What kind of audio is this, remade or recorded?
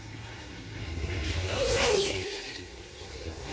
remade